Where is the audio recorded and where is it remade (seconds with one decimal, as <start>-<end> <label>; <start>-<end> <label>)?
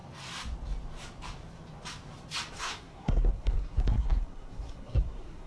0.0-2.6 recorded; 2.6-5.5 remade